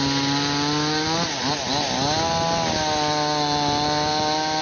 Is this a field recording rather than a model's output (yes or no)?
yes